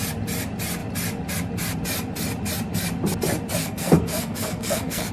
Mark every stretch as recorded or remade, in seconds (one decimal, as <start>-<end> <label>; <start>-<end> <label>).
0.0-3.6 recorded; 3.6-5.1 remade